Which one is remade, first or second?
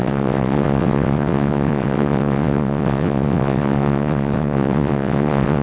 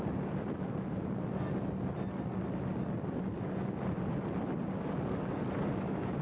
first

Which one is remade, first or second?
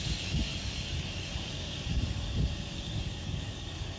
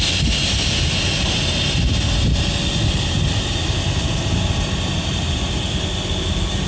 first